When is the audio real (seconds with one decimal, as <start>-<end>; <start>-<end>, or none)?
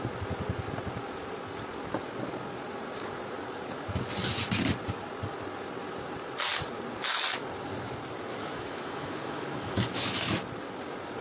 0.0-8.3; 10.3-11.2